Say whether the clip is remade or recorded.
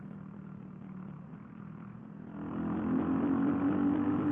recorded